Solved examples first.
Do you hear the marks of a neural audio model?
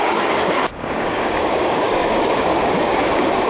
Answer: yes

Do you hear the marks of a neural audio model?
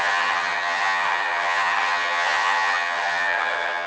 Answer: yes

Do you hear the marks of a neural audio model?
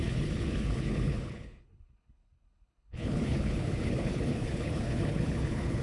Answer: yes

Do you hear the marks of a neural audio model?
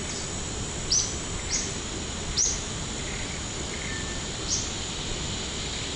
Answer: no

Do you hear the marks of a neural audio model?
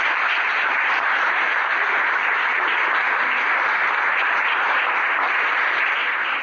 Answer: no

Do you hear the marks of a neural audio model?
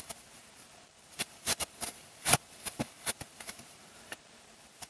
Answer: yes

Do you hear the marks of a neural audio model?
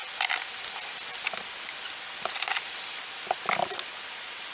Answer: no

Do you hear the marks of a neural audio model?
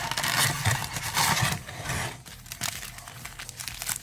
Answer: no